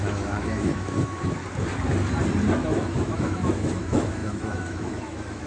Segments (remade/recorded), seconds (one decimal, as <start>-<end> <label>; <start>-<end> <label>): 0.0-1.4 remade; 1.4-2.5 recorded; 2.5-5.5 remade